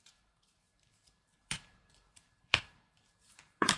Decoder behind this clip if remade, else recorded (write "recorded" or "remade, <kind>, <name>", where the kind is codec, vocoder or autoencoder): remade, vocoder, BigVGAN v2